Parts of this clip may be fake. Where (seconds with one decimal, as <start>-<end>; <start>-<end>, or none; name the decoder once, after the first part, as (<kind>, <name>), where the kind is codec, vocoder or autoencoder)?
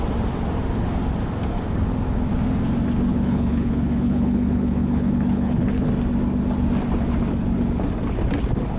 3.1-5.9 (codec, HILCodec)